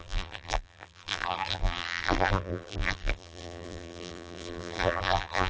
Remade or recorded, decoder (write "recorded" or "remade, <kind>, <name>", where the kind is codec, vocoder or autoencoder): remade, vocoder, BigVGAN v2